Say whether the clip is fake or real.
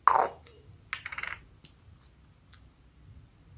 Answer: real